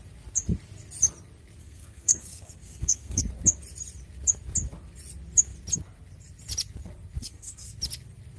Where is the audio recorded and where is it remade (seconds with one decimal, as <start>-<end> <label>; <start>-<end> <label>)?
0.0-1.6 recorded; 1.6-3.2 remade; 3.2-7.2 recorded; 7.2-7.7 remade; 7.7-8.4 recorded